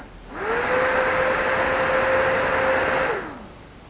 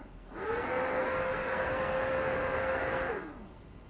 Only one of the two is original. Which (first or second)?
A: first